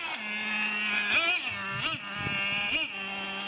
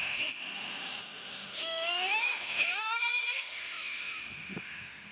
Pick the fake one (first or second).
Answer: second